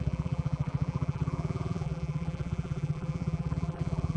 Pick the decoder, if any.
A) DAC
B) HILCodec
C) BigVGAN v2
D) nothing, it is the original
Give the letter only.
C